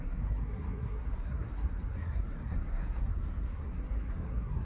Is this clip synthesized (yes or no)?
yes